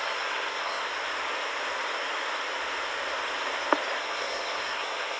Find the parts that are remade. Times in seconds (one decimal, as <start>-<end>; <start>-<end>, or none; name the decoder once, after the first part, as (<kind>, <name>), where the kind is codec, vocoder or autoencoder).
0.0-0.9 (codec, SNAC); 4.0-5.2